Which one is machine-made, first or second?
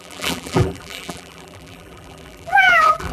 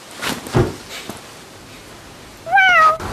first